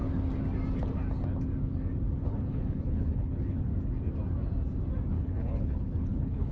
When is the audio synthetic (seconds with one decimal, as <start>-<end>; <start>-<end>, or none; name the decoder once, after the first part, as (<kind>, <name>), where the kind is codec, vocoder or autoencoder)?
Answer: 2.2-3.7 (codec, HILCodec); 5.1-6.5